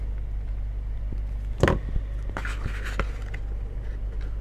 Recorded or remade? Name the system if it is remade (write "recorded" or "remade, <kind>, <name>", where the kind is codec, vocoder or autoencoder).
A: recorded